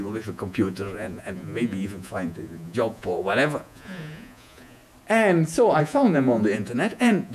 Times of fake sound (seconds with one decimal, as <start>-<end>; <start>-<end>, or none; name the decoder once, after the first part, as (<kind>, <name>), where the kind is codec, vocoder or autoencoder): 0.0-4.8 (vocoder, Vocos); 5.8-7.3